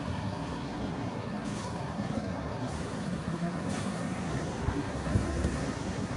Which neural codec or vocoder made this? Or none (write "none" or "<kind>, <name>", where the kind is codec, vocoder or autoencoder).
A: codec, SNAC